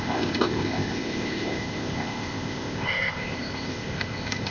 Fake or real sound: fake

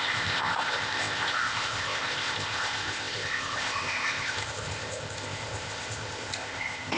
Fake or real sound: fake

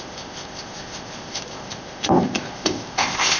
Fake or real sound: fake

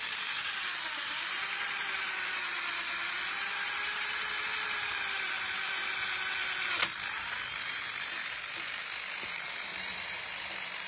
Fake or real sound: real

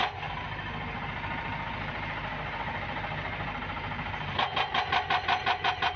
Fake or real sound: real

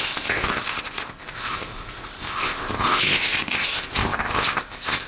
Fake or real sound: fake